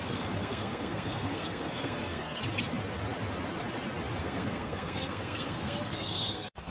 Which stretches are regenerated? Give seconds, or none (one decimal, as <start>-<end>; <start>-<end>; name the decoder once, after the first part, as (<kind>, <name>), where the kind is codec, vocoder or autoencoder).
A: 0.0-2.4 (codec, SNAC); 4.2-6.7